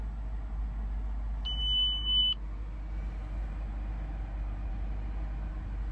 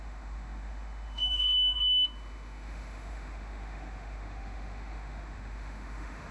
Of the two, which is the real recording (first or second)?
first